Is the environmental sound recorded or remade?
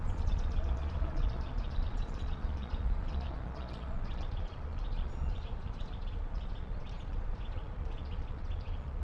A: remade